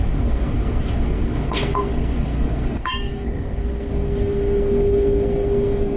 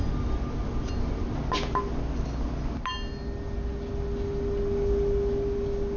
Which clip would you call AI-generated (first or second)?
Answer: first